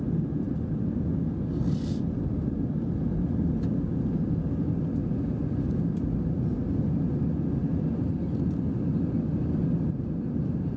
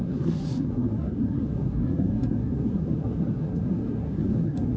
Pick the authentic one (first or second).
first